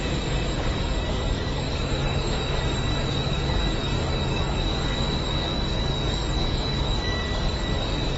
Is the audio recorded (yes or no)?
no